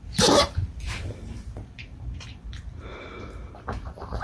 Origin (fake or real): fake